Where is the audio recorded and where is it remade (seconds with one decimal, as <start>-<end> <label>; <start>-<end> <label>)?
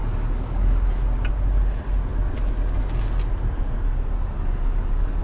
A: 0.0-0.9 remade; 0.9-5.2 recorded